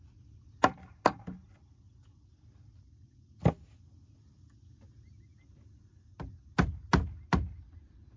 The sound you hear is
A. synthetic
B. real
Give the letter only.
B